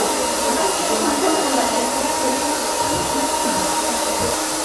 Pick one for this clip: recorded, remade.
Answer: recorded